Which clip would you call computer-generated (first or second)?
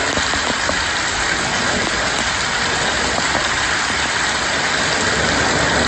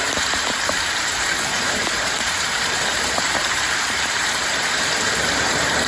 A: second